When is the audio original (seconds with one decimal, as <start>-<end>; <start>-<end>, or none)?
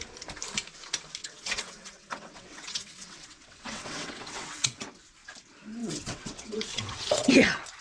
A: 0.0-1.2; 4.9-5.8; 7.3-7.8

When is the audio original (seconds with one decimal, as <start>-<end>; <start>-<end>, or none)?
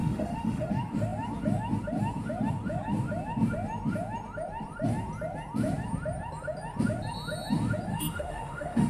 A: 0.7-7.9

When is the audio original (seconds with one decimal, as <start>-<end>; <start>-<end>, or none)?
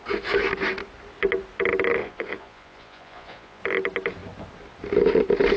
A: 0.0-2.0; 3.6-5.6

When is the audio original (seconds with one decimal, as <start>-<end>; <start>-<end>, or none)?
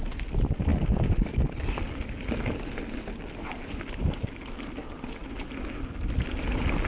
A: 0.0-6.9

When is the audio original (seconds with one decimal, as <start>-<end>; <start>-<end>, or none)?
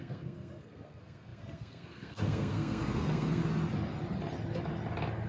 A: 3.4-5.3